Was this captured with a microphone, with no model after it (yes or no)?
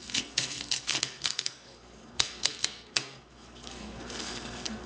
no